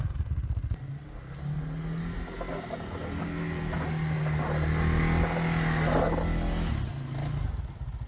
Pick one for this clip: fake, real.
real